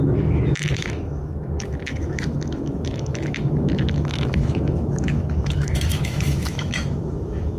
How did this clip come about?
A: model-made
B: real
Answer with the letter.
A